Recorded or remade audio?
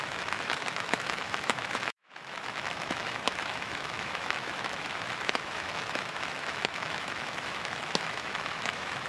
remade